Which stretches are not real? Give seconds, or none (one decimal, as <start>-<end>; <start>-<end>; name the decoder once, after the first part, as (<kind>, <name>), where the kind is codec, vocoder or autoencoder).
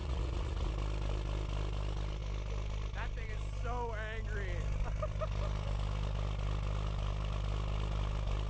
0.0-0.7 (vocoder, Vocos)